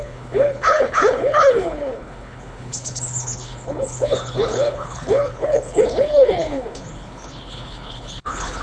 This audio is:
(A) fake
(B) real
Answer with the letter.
A